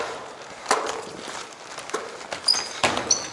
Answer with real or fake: real